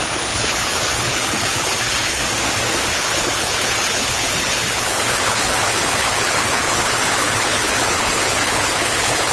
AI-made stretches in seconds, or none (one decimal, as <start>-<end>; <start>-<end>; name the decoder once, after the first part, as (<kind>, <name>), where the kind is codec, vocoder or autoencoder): 0.0-2.2 (codec, HILCodec); 2.9-9.3